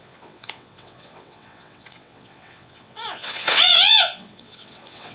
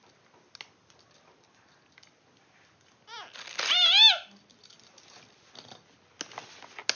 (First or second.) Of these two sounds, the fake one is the first